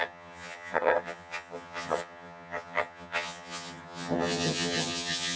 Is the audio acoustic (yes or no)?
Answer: no